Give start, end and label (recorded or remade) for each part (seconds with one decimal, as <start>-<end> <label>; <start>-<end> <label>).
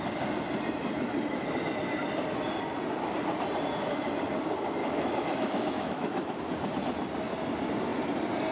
0.0-4.8 recorded; 4.8-6.4 remade; 6.4-8.5 recorded